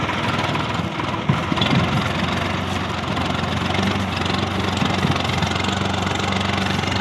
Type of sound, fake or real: real